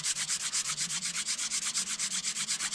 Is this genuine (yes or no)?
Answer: yes